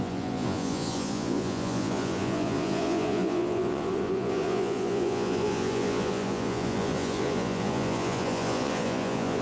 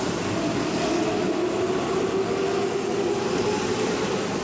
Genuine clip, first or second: second